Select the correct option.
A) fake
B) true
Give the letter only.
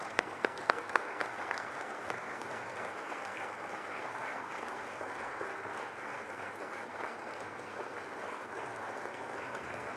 A